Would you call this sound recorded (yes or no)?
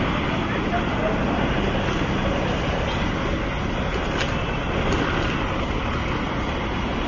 yes